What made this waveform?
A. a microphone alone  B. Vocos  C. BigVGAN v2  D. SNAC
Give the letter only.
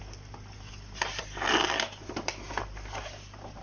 A